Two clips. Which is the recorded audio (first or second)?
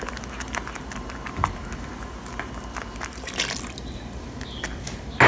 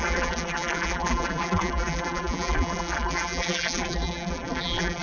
first